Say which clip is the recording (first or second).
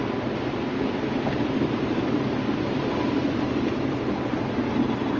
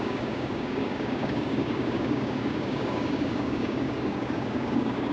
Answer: first